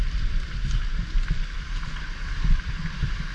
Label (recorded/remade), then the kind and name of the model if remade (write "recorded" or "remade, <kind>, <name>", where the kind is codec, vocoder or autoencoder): recorded